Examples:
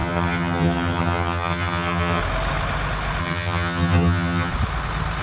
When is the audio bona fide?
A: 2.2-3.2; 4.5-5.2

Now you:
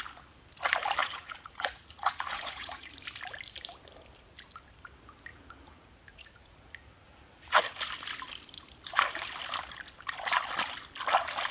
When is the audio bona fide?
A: 0.0-1.0; 3.0-5.3; 7.6-11.5